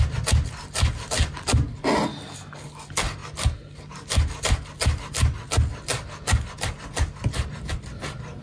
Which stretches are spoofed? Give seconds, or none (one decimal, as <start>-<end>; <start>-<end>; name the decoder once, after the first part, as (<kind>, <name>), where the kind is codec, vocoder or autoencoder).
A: none